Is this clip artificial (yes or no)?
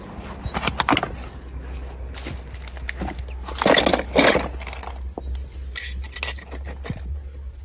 no